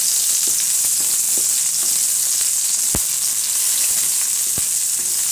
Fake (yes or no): no